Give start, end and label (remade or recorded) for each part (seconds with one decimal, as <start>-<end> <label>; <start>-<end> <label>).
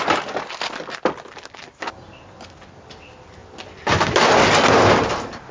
0.0-5.5 recorded